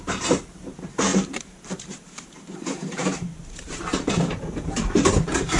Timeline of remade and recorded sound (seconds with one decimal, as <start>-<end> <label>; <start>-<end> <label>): 0.0-5.6 remade